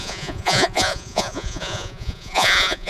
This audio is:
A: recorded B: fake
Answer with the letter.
B